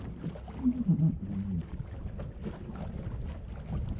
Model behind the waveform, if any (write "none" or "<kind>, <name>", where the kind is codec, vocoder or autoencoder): none